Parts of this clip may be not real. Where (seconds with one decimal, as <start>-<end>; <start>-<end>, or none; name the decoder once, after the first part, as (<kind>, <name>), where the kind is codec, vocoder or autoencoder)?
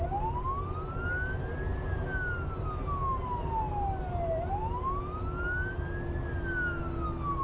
none